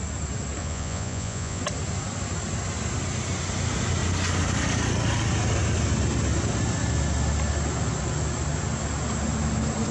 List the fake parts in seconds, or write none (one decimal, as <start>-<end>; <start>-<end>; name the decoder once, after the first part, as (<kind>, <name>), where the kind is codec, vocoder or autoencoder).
0.6-1.6 (vocoder, Vocos)